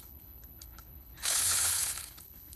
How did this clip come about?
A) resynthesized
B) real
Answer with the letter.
A